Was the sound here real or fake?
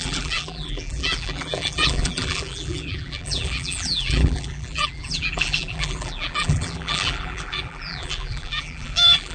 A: fake